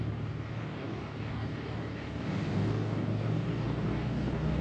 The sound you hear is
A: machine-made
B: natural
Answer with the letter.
A